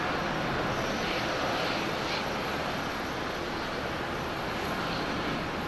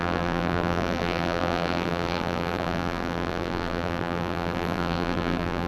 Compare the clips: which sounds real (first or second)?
first